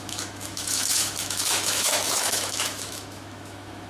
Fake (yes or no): yes